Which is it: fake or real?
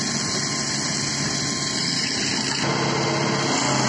real